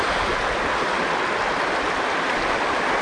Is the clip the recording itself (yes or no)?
yes